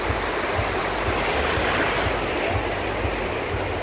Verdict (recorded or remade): recorded